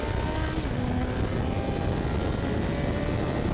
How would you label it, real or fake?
real